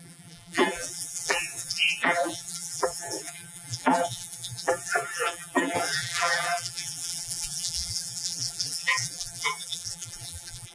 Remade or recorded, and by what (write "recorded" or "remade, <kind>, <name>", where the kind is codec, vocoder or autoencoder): remade, vocoder, BigVGAN v2